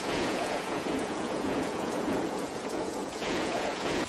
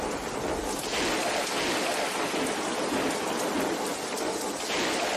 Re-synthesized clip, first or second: first